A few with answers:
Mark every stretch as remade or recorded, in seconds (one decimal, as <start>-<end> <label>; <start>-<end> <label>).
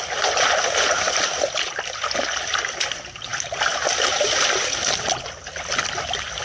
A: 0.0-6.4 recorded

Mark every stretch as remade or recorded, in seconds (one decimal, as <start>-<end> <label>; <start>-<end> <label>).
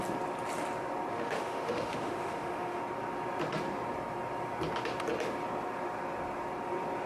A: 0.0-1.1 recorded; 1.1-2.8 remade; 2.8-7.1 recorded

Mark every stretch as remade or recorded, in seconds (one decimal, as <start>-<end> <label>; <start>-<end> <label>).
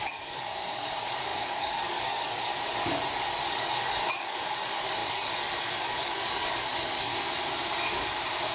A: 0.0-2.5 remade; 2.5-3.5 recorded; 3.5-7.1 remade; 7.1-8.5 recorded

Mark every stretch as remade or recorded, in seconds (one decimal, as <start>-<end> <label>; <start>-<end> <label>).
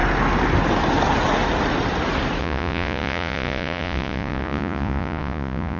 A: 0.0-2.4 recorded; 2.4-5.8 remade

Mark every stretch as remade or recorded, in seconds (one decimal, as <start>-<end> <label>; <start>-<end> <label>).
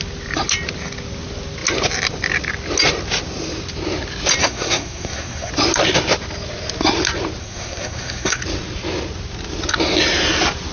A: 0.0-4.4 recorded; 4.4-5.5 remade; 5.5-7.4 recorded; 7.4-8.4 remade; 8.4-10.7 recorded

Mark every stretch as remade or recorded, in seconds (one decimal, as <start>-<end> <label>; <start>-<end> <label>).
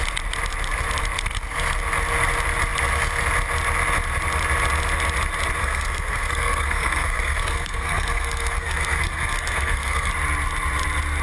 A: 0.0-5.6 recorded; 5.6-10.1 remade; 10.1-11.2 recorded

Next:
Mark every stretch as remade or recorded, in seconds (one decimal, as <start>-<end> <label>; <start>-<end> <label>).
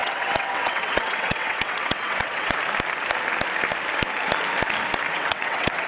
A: 0.0-2.6 remade; 2.6-5.1 recorded; 5.1-5.9 remade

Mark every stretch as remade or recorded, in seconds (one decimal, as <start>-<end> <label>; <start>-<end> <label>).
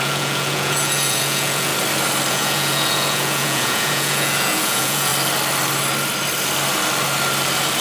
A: 0.0-1.7 remade; 1.7-2.3 recorded; 2.3-5.1 remade; 5.1-7.8 recorded